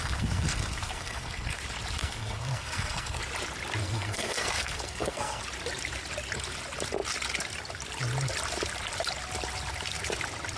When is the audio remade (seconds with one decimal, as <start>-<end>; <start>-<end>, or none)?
0.0-1.6; 2.0-3.2; 3.8-5.4